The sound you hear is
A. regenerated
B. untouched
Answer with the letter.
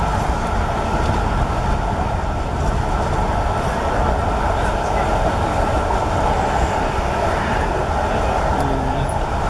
B